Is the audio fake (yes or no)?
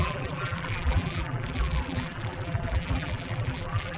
yes